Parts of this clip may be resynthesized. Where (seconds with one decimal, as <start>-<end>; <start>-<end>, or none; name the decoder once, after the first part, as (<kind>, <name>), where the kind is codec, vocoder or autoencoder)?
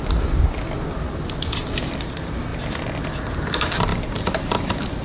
none